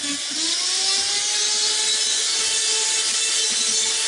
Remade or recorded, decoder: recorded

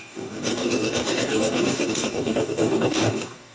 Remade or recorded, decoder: remade, codec, DAC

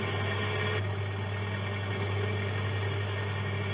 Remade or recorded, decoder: recorded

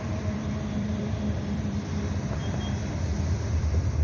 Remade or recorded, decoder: remade, vocoder, BigVGAN v2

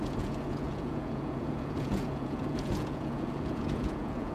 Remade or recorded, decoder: remade, vocoder, Vocos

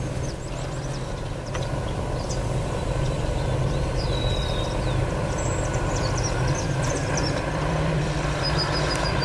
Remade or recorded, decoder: remade, vocoder, BigVGAN v2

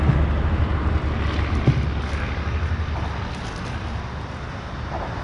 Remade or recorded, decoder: recorded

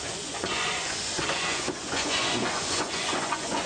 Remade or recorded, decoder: remade, vocoder, Vocos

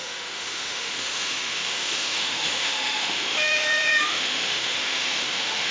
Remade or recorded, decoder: remade, autoencoder, DAC-VAE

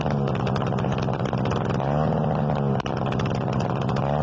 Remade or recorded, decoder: recorded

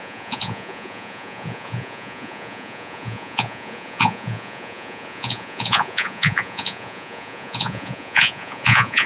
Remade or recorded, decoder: remade, vocoder, Vocos